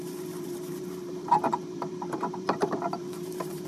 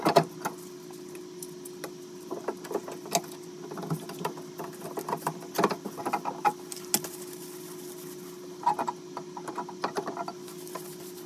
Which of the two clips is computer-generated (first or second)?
first